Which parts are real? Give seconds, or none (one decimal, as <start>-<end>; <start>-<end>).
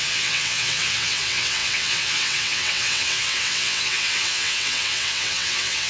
none